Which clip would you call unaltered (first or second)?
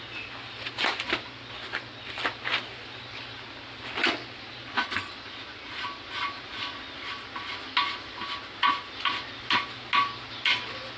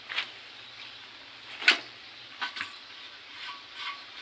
first